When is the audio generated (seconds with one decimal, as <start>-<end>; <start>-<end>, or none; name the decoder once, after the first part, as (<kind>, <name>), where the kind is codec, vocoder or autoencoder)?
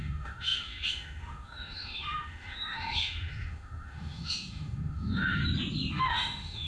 0.0-5.4 (autoencoder, DAC-VAE); 5.9-6.7